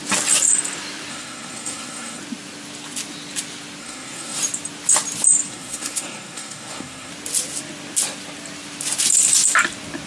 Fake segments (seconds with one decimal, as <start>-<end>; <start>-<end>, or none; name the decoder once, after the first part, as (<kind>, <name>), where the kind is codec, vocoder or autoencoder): 1.1-2.2 (codec, SNAC); 3.8-4.4; 5.5-7.1